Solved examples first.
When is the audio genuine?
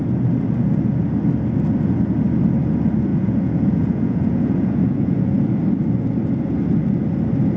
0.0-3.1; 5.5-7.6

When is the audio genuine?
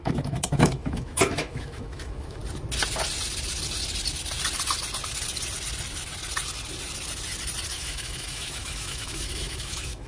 2.4-7.7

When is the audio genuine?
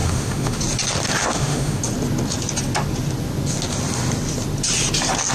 0.6-1.2; 1.8-5.3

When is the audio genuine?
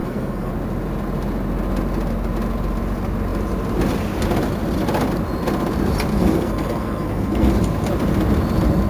0.5-6.1; 7.5-8.9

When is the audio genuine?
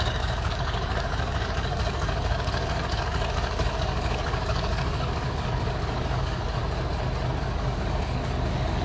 6.6-7.4